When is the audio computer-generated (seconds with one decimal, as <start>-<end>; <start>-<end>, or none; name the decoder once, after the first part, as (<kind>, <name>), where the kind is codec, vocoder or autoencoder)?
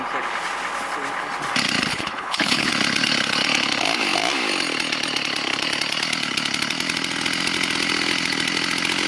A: 1.9-2.7 (codec, HILCodec)